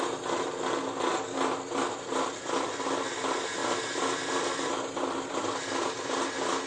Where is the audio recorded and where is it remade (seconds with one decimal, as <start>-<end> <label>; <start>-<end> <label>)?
0.0-3.6 recorded; 3.6-6.2 remade; 6.2-6.7 recorded